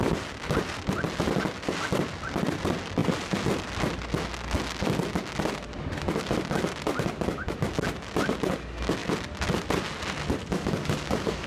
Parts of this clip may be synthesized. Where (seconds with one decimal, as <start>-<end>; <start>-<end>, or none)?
10.4-11.5